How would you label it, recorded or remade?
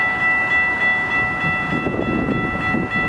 recorded